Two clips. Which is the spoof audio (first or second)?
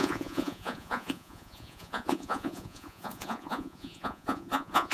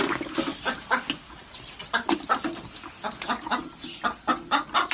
first